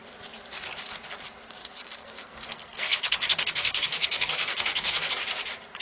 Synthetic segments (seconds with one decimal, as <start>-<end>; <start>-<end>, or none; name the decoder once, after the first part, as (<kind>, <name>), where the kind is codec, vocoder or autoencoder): 1.6-5.1 (codec, SNAC)